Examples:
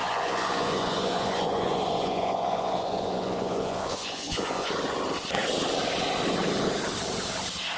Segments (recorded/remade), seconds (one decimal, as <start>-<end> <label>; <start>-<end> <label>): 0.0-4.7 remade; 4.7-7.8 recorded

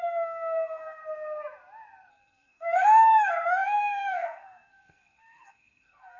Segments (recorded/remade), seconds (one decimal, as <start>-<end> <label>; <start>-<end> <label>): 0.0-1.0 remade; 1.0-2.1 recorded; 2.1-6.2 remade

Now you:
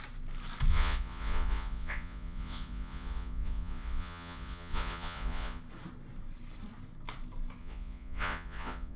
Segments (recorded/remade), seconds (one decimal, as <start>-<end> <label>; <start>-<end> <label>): 0.0-0.7 recorded; 0.7-5.6 remade; 5.6-7.6 recorded; 7.6-9.0 remade

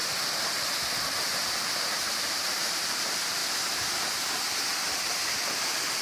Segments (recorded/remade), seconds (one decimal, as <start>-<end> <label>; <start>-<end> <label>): 0.0-3.4 remade; 3.4-5.3 recorded; 5.3-6.0 remade

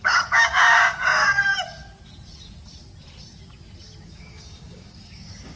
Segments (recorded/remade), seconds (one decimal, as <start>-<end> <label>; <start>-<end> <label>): 0.0-1.5 remade; 1.5-4.0 recorded; 4.0-5.6 remade

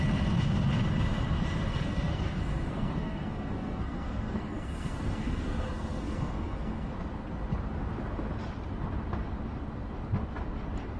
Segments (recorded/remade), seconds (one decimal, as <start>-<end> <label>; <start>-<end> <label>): 0.0-1.7 recorded; 1.7-6.9 remade; 6.9-11.0 recorded

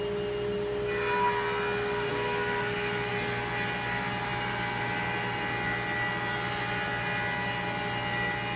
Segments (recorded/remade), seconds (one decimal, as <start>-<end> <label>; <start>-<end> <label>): 0.0-8.6 recorded